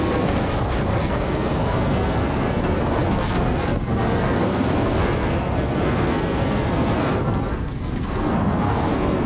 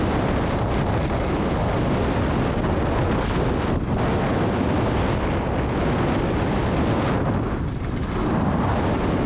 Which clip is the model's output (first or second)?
first